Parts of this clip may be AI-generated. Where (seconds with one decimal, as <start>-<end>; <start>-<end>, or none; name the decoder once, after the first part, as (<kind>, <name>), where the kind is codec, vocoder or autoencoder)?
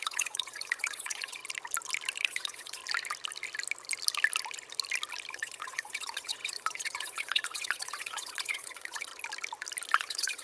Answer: 0.0-1.4 (vocoder, Vocos); 2.2-2.8; 5.3-9.1; 9.9-10.4